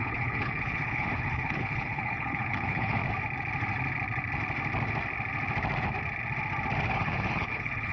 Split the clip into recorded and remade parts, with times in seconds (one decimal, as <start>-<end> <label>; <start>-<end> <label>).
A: 0.0-3.0 remade; 3.0-6.9 recorded; 6.9-7.9 remade